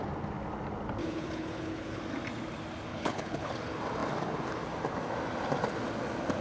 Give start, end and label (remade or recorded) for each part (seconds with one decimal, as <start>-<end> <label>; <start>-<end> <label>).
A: 0.0-1.0 recorded; 1.0-2.0 remade; 2.0-2.9 recorded; 2.9-3.5 remade; 3.5-6.4 recorded